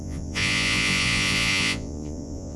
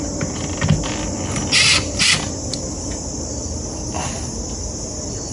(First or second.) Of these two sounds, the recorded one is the second